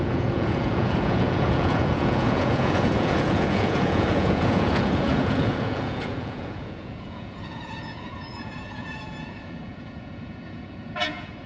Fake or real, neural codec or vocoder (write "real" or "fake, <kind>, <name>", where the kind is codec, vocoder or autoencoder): fake, vocoder, Vocos